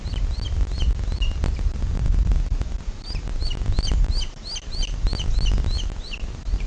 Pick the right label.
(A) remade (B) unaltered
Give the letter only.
B